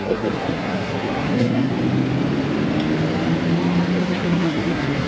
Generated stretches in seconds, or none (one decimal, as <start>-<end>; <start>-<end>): 0.0-1.7; 4.0-5.1

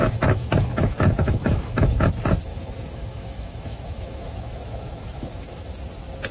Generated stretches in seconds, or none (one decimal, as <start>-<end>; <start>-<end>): 0.0-2.1; 2.5-5.7

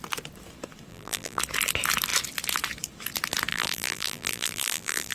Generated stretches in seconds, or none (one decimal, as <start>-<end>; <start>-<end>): 0.9-1.4; 3.5-5.1

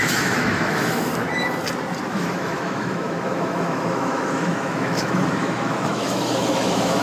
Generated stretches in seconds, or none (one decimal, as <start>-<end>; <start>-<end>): 0.0-1.1; 2.0-7.0